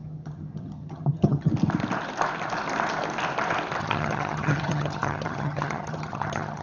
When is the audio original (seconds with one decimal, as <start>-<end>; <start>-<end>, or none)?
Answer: 1.5-3.8